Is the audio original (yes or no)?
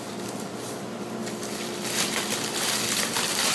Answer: yes